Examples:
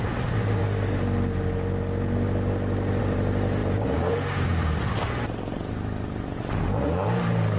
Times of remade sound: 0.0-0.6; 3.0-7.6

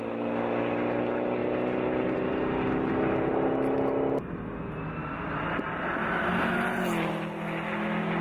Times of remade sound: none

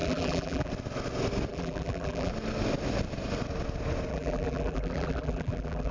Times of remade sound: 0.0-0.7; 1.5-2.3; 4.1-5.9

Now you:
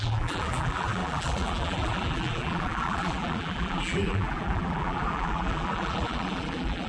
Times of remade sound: 0.0-6.9

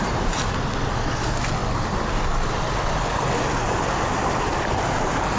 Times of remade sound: 1.6-4.8

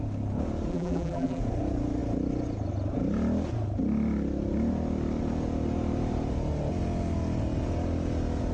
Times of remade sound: 0.7-1.4

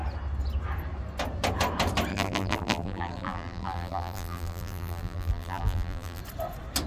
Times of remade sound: 2.1-6.2

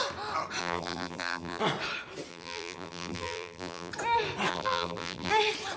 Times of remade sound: 0.6-1.6; 2.3-3.9; 4.5-5.3